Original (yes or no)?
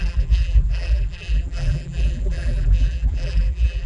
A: no